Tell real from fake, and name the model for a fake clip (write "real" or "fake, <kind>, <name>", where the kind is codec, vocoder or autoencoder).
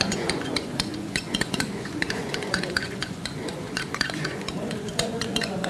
fake, vocoder, Vocos